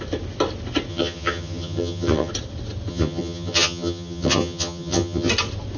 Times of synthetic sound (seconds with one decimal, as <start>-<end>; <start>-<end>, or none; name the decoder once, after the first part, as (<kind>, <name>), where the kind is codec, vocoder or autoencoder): 0.9-2.3 (vocoder, HiFi-GAN); 2.9-5.3